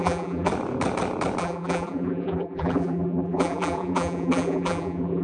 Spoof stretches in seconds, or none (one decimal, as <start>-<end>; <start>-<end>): 0.0-0.5; 1.4-5.2